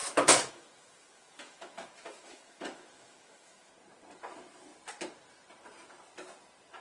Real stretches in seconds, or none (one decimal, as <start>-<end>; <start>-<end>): 3.7-6.8